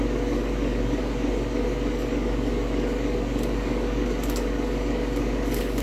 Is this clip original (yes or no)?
no